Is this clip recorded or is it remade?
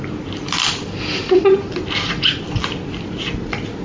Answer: recorded